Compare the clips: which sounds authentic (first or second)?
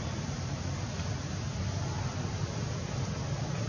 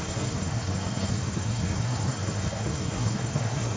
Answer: first